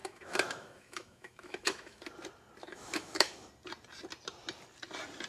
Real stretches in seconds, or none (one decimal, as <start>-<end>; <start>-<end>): 2.0-2.6; 3.5-5.3